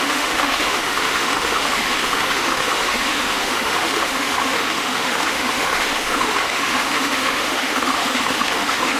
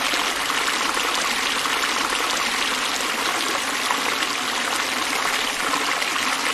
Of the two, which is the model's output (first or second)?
first